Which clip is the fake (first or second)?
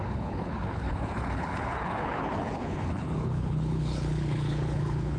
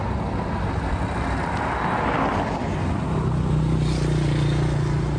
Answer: first